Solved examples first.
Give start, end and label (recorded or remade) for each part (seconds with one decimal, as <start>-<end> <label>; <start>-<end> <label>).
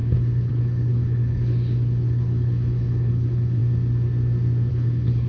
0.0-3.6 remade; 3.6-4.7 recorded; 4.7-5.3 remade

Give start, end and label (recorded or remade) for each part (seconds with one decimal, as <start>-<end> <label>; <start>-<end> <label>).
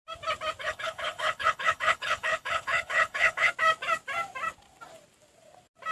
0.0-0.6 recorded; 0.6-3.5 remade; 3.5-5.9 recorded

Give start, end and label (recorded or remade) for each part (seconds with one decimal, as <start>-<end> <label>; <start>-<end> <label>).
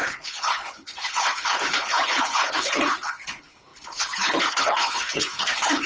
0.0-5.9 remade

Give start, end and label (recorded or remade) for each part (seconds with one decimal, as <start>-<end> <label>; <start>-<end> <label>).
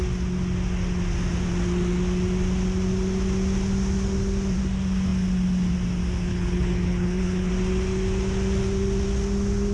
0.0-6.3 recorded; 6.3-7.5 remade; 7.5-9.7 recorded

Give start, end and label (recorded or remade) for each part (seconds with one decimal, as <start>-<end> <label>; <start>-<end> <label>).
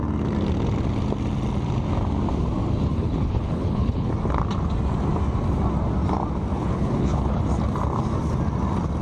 0.0-2.9 recorded; 2.9-4.1 remade; 4.1-6.5 recorded; 6.5-7.4 remade; 7.4-9.0 recorded